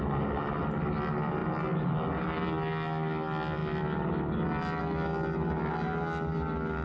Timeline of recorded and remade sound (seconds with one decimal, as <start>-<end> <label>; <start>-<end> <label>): 0.0-6.8 recorded